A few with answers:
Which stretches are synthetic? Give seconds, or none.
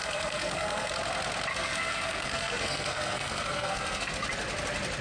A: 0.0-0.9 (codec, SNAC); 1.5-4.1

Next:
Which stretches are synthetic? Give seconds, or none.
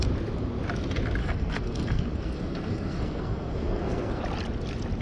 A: 1.2-4.2 (codec, SNAC)